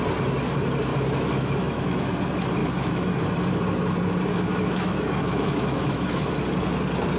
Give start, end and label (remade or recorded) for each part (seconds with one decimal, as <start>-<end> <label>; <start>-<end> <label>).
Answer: 0.0-0.9 recorded; 0.9-2.2 remade; 2.2-2.6 recorded; 2.6-3.2 remade; 3.2-4.3 recorded; 4.3-6.3 remade; 6.3-7.2 recorded